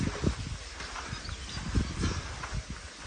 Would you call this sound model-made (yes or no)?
no